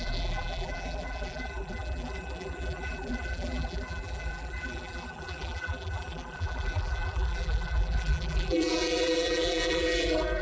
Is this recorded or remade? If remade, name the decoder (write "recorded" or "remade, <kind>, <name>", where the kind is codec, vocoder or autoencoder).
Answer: remade, vocoder, BigVGAN v2